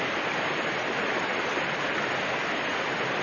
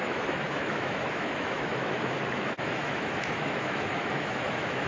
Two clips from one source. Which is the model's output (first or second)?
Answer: second